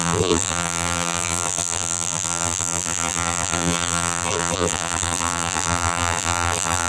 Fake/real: fake